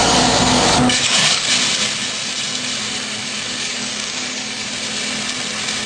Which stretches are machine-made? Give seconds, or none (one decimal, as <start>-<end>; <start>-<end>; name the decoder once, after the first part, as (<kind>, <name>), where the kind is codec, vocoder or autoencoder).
0.0-1.5 (codec, DAC); 3.2-4.7